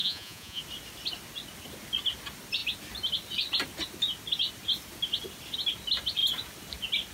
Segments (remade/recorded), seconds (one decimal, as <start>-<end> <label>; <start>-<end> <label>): 0.0-0.6 remade; 0.6-7.1 recorded